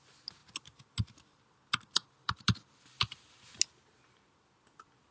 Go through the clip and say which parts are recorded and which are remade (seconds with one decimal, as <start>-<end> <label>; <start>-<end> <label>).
0.0-2.0 recorded; 2.0-3.4 remade; 3.4-5.1 recorded